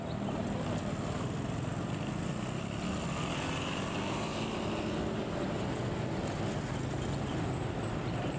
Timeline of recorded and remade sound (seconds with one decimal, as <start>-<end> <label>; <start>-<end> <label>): 0.0-8.4 recorded

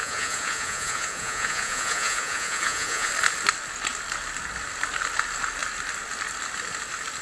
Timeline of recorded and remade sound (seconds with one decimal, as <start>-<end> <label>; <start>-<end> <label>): 0.0-3.1 remade; 3.1-7.2 recorded

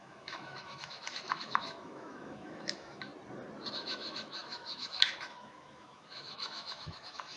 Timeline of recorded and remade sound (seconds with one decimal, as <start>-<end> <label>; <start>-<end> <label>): 0.0-3.1 remade; 3.1-3.7 recorded; 3.7-7.4 remade

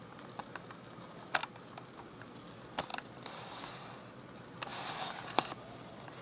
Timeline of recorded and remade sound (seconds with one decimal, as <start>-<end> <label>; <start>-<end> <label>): 0.0-2.9 recorded; 2.9-3.7 remade; 3.7-4.7 recorded; 4.7-5.2 remade; 5.2-6.2 recorded